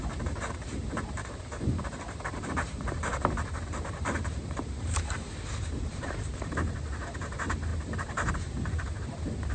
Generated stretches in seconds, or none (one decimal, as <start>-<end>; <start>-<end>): 0.0-9.5